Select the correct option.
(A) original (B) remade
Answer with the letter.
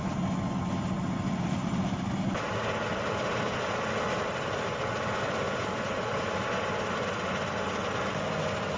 A